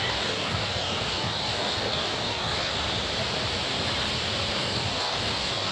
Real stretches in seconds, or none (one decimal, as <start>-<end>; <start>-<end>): 2.7-4.6